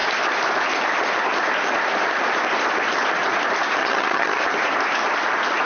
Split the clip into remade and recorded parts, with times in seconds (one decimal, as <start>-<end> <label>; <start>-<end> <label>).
0.0-3.8 recorded; 3.8-4.4 remade; 4.4-5.6 recorded